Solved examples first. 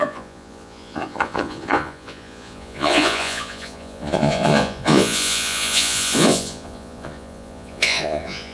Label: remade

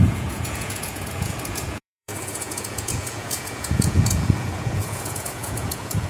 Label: remade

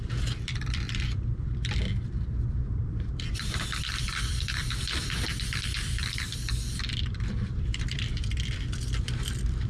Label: remade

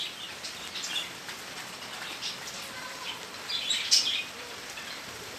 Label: remade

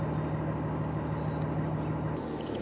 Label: recorded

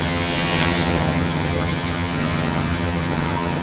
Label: remade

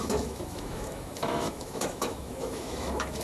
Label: remade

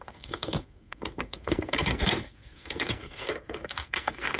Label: remade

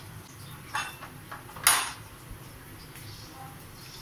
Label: recorded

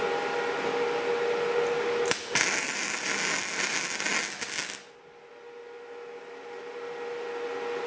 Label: recorded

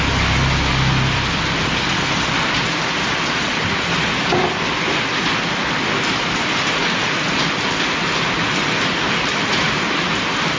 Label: recorded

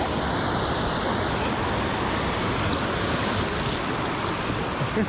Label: recorded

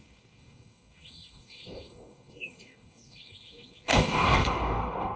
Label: remade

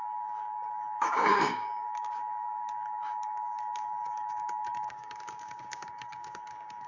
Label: remade